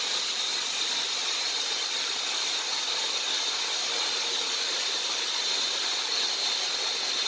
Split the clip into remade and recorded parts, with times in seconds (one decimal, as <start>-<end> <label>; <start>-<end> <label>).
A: 0.0-7.3 recorded